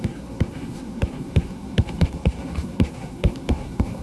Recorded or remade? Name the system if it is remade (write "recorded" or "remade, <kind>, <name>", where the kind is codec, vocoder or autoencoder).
remade, codec, SNAC